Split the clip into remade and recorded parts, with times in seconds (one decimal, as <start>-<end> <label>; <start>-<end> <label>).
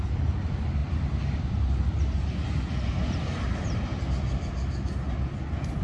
0.0-0.8 recorded; 0.8-4.0 remade; 4.0-5.8 recorded